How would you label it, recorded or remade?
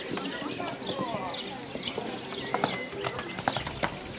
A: recorded